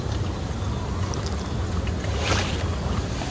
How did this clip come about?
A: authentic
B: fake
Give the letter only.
A